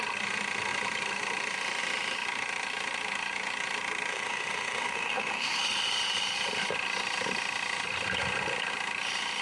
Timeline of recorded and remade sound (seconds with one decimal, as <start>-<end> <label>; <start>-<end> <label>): 0.0-4.1 recorded; 4.1-5.6 remade; 5.6-9.4 recorded